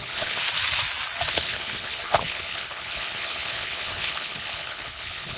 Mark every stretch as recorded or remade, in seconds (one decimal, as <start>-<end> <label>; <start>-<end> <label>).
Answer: 0.0-0.4 remade; 0.4-1.3 recorded; 1.3-5.4 remade